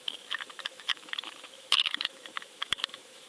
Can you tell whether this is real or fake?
fake